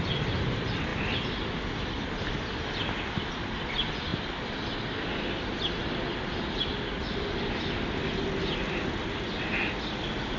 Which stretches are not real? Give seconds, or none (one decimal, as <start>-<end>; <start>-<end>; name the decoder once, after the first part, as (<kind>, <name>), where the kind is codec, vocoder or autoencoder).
none